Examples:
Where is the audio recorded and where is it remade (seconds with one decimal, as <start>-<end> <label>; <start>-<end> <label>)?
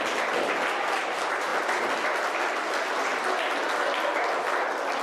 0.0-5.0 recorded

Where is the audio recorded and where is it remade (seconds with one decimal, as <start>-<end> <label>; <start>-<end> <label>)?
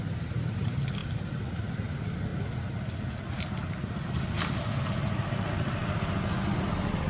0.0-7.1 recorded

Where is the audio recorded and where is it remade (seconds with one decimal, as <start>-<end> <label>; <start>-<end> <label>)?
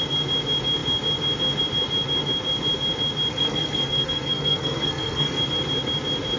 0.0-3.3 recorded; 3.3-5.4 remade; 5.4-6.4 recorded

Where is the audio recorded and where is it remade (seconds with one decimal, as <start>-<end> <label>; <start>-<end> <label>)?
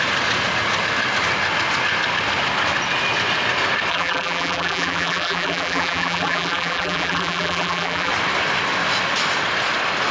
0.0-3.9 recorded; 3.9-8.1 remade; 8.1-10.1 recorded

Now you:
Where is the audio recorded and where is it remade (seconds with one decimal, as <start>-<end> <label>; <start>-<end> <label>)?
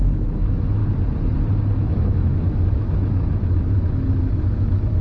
0.0-0.8 remade; 0.8-1.8 recorded; 1.8-5.0 remade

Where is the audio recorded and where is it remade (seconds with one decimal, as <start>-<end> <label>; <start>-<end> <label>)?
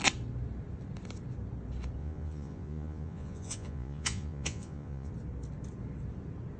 0.0-2.0 recorded; 2.0-5.1 remade; 5.1-6.6 recorded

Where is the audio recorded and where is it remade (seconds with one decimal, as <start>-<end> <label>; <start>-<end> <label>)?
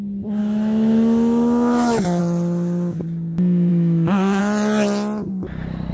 0.0-0.4 recorded; 0.4-2.2 remade; 2.2-3.7 recorded; 3.7-4.4 remade; 4.4-5.9 recorded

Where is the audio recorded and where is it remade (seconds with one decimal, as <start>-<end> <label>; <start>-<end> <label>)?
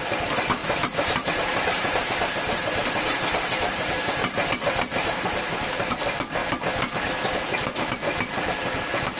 0.0-0.6 recorded; 0.6-2.1 remade; 2.1-4.2 recorded; 4.2-6.0 remade; 6.0-9.2 recorded